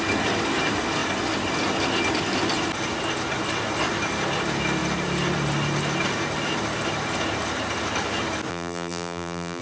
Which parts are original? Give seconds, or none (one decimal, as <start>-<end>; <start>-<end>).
0.0-8.5